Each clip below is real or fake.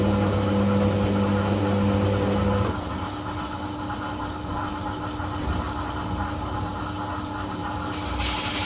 real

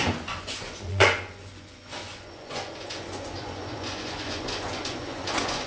fake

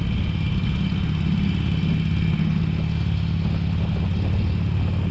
real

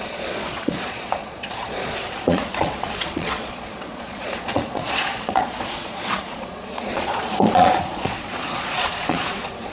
fake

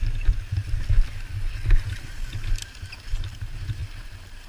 real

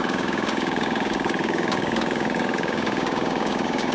fake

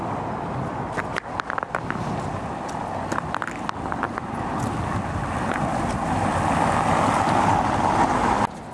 real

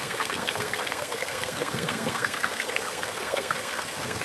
fake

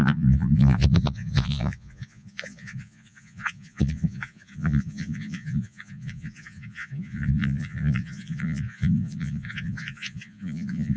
fake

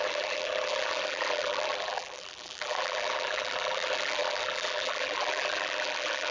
fake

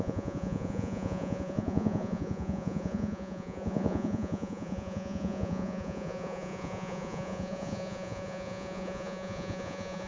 fake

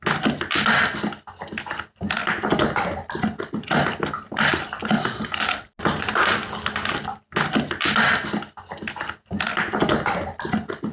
real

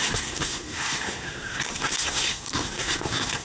fake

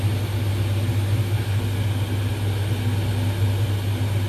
real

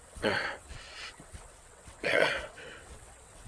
fake